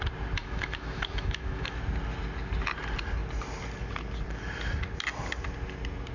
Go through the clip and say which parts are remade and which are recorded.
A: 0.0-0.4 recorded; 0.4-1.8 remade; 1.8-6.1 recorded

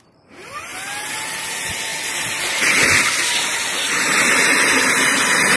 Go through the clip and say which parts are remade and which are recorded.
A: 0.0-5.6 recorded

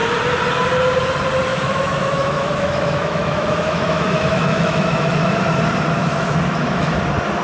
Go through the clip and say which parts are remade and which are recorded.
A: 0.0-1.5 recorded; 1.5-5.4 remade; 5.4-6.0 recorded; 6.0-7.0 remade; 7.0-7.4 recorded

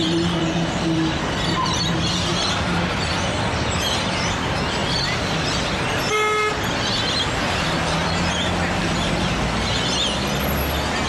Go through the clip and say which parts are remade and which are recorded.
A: 0.0-11.1 recorded